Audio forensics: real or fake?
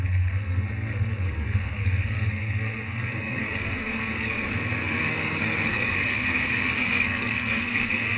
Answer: fake